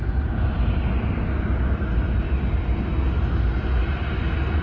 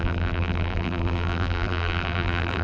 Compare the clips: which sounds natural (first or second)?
first